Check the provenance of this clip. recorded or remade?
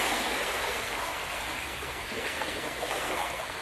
remade